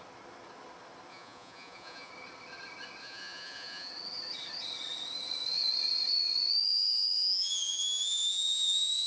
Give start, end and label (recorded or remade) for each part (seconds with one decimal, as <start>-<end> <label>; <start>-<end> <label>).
0.0-1.1 recorded; 1.1-2.1 remade; 2.1-3.0 recorded; 3.0-3.9 remade; 3.9-6.7 recorded; 6.7-9.1 remade